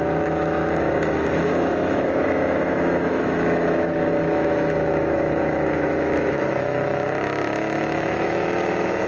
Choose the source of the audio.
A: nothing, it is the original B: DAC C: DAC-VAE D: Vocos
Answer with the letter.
C